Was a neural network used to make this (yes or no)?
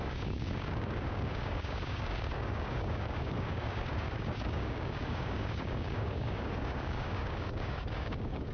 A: yes